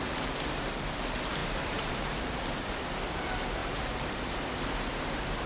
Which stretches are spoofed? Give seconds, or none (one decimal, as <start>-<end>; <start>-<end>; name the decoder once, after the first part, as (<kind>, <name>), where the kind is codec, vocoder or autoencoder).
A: 1.4-2.2 (vocoder, BigVGAN v2); 3.6-4.2